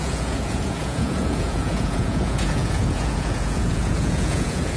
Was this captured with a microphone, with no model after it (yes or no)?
no